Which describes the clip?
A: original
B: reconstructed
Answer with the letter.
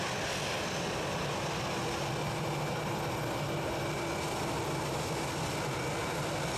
A